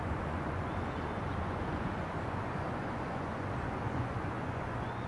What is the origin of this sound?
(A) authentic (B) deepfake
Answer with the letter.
B